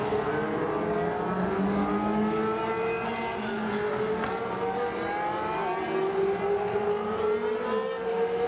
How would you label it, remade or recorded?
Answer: recorded